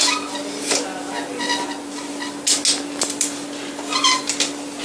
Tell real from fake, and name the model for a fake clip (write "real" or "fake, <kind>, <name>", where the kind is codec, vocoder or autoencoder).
real